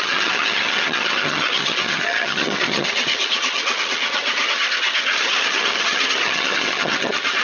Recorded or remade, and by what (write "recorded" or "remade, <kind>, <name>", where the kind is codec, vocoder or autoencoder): remade, vocoder, HiFi-GAN